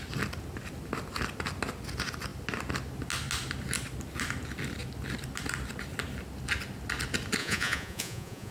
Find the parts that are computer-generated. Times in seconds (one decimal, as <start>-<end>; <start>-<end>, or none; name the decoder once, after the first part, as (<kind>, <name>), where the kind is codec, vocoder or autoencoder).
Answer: 7.4-8.5 (vocoder, Vocos)